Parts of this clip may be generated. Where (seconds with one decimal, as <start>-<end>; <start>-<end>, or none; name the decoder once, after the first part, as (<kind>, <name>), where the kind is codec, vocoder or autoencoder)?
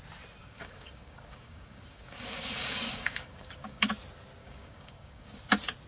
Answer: 0.4-3.8 (codec, DAC); 4.4-5.4